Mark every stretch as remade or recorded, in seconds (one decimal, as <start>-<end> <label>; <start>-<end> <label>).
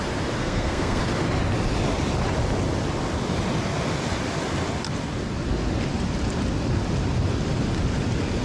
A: 0.0-0.4 recorded; 0.4-1.0 remade; 1.0-8.4 recorded